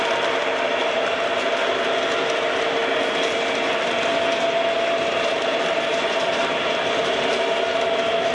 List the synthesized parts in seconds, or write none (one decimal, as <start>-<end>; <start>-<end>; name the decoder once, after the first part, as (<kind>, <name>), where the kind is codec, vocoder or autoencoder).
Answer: none